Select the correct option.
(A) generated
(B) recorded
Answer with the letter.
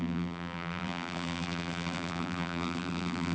A